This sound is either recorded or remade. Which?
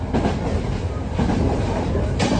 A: recorded